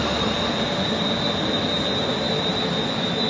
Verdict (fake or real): real